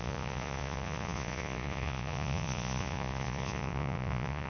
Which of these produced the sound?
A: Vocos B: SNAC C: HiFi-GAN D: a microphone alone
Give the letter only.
A